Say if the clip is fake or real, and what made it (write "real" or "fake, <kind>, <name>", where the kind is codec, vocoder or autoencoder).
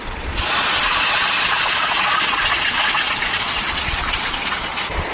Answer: fake, vocoder, Vocos